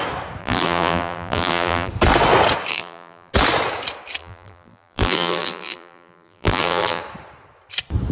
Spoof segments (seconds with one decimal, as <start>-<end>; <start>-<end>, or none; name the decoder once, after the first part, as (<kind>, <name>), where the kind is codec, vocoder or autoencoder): 0.4-1.9 (vocoder, BigVGAN v2); 2.7-3.3; 4.2-7.0